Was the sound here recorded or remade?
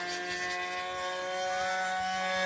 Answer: recorded